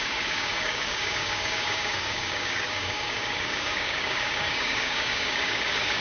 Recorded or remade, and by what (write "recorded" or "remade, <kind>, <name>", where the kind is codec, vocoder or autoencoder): remade, codec, DAC